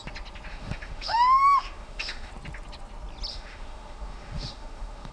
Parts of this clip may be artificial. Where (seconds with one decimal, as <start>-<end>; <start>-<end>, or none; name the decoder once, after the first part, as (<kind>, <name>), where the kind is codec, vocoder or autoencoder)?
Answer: 0.5-2.3 (autoencoder, DAC-VAE); 3.3-5.1